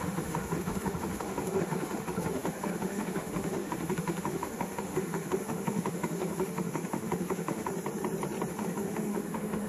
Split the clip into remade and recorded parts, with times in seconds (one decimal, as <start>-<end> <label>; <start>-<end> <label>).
0.0-7.7 remade; 7.7-8.5 recorded; 8.5-9.7 remade